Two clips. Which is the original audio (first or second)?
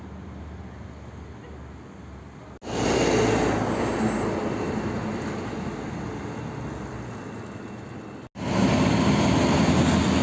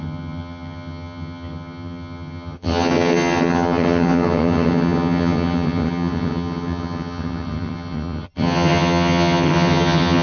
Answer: first